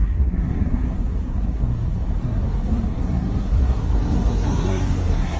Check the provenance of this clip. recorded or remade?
remade